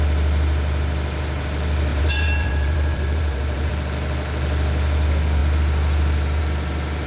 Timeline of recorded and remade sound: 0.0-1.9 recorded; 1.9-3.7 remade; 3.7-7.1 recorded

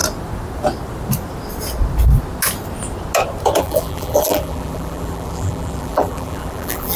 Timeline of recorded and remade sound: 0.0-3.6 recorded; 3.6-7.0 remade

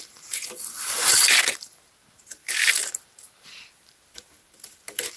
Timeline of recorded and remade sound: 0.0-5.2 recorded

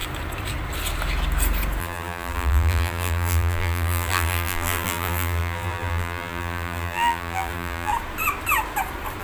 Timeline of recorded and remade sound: 0.0-1.8 recorded; 1.8-7.9 remade; 7.9-9.2 recorded

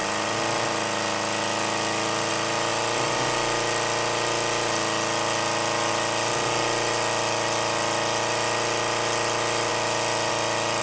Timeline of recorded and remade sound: 0.0-10.8 recorded